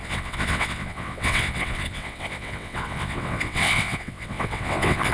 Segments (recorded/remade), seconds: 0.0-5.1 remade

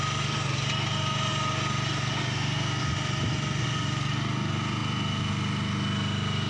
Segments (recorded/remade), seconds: 0.0-6.5 recorded

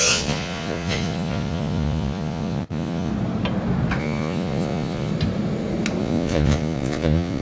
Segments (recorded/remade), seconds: 0.0-3.1 remade; 3.1-4.0 recorded; 4.0-5.1 remade; 5.1-6.0 recorded; 6.0-7.4 remade

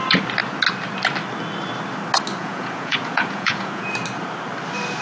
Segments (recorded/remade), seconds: 0.0-2.4 recorded; 2.4-3.9 remade; 3.9-5.0 recorded

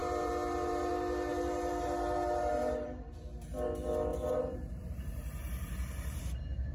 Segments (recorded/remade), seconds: 0.0-0.9 remade; 0.9-1.3 recorded; 1.3-3.1 remade; 3.1-4.1 recorded; 4.1-6.3 remade; 6.3-6.7 recorded

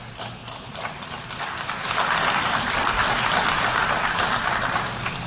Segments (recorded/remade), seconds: 0.0-5.3 recorded

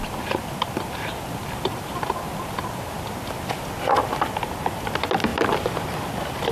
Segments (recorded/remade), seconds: 0.0-6.5 recorded